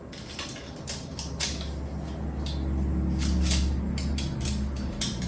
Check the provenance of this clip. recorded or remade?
recorded